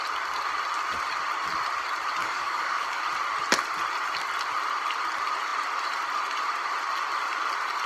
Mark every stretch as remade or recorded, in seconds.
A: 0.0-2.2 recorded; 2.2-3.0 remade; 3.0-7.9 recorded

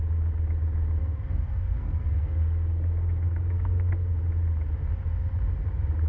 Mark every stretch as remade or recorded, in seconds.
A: 0.0-1.0 recorded; 1.0-4.2 remade; 4.2-6.1 recorded

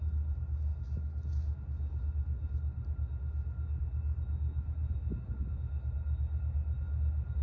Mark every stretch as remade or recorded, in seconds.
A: 0.0-7.4 recorded

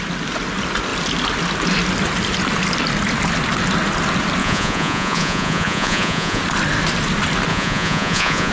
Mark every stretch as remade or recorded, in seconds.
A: 0.0-4.4 recorded; 4.4-6.4 remade; 6.4-7.5 recorded; 7.5-8.5 remade